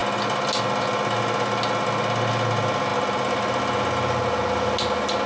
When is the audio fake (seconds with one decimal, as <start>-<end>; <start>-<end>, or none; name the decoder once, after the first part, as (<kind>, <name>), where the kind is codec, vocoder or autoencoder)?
none